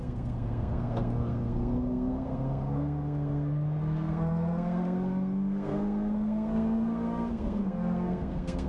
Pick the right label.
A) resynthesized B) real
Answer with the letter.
A